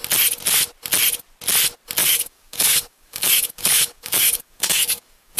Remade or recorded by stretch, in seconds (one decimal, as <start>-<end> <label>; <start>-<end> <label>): 0.0-2.0 recorded; 2.0-5.4 remade